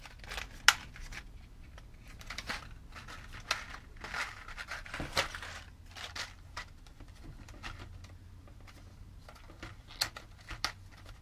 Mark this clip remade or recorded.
recorded